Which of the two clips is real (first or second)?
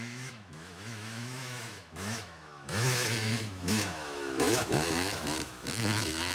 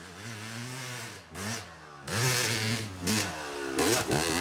second